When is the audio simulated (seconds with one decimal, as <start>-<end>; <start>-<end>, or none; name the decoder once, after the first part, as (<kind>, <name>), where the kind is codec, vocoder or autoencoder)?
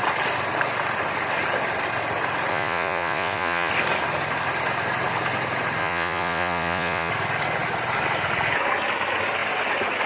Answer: 2.5-3.7 (vocoder, Vocos); 5.8-7.1